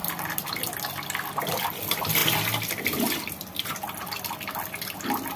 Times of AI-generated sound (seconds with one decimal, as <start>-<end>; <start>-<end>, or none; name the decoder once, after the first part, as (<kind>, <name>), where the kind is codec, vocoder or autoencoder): none

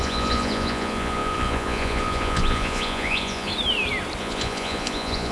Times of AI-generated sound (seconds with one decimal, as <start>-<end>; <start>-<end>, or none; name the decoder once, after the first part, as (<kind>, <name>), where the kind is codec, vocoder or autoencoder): 0.0-3.5 (vocoder, Vocos); 4.2-5.3

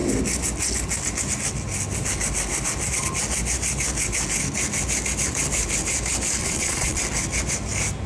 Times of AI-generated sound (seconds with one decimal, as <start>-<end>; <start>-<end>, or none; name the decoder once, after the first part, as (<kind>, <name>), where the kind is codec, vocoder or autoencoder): 6.4-7.0 (vocoder, Vocos)

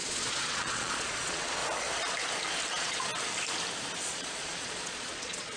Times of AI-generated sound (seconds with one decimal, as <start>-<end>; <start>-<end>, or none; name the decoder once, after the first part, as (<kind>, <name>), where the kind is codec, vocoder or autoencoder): 0.0-1.6 (vocoder, Vocos); 2.7-3.1; 4.0-5.6

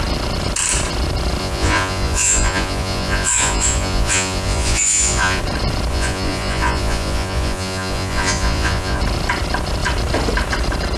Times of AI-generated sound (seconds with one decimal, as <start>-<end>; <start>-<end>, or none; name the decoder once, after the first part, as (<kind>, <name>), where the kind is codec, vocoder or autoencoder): 1.4-5.4 (vocoder, Vocos); 5.9-9.0

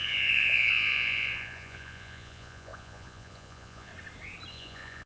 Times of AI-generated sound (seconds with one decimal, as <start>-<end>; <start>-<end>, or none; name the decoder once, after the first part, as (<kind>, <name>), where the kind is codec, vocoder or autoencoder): 0.0-3.9 (vocoder, Vocos); 4.5-5.1

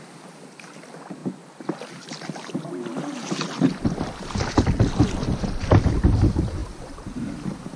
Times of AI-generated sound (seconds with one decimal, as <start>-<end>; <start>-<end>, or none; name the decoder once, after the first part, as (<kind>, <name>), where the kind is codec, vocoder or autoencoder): none

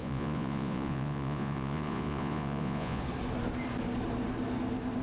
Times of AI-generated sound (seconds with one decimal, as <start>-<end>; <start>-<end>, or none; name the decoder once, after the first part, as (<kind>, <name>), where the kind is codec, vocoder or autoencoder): 0.0-3.0 (vocoder, Vocos)